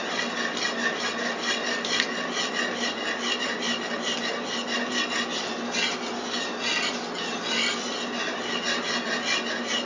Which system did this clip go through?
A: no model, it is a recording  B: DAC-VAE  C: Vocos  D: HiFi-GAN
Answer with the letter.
A